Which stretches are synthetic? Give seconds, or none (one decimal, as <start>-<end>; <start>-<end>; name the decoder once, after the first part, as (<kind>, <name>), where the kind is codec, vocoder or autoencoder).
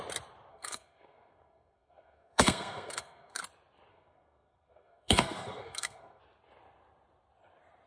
0.5-3.4 (codec, SNAC); 3.9-6.2